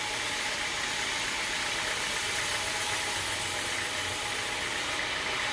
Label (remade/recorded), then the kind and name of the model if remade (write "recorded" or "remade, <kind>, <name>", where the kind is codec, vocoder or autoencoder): recorded